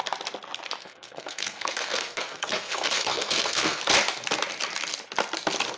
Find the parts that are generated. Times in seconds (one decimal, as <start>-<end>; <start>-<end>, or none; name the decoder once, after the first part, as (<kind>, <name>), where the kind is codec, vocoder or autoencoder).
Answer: 0.8-3.8 (codec, SNAC)